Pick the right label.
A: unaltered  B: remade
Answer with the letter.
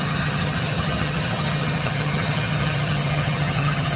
B